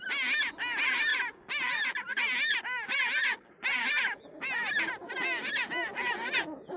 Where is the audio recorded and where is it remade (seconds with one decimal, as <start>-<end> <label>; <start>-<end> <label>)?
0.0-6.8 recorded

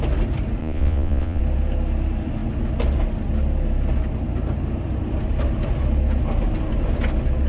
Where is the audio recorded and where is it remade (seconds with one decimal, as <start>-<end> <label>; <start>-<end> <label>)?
0.0-0.6 recorded; 0.6-1.4 remade; 1.4-7.5 recorded

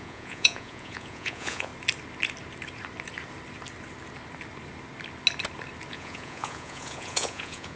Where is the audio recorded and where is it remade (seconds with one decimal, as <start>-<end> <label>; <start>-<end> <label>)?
0.0-1.7 remade; 1.7-5.9 recorded; 5.9-7.8 remade

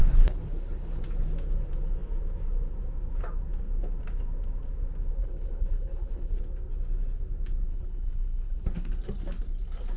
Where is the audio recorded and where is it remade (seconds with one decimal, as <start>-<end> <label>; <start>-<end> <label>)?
0.0-1.0 remade; 1.0-5.2 recorded; 5.2-6.4 remade; 6.4-7.7 recorded; 7.7-8.9 remade; 8.9-10.0 recorded